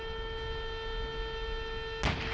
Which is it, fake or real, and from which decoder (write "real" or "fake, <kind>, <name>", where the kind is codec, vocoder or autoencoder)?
real